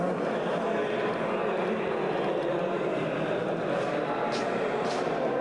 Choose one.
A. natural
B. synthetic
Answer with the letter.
A